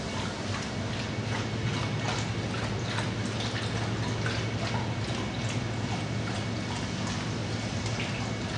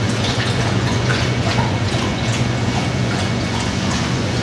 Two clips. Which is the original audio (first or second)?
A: first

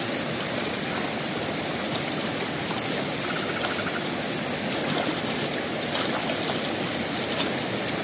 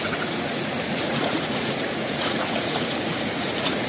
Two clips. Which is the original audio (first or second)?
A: first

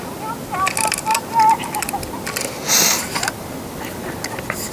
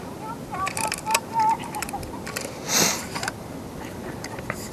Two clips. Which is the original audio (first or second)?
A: first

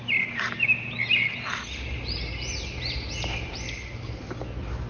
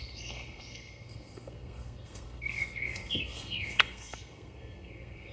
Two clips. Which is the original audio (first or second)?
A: first